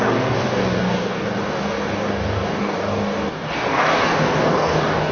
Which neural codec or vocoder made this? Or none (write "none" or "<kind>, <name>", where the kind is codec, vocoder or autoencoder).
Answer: codec, DAC